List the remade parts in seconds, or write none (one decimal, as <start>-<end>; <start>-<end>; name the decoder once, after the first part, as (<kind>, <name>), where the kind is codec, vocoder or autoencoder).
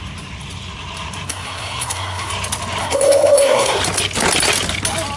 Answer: 1.3-2.3 (codec, SNAC); 2.8-3.8